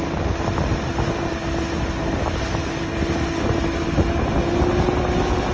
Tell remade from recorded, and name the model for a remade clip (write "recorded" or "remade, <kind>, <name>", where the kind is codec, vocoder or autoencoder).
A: recorded